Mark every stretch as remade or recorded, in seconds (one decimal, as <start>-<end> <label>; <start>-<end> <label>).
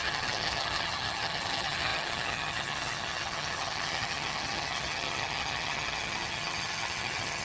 0.0-7.4 remade